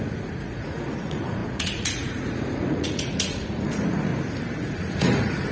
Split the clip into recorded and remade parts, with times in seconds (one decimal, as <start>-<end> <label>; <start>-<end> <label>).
0.0-4.1 remade; 4.1-4.8 recorded; 4.8-5.5 remade